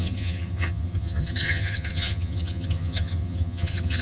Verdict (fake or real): fake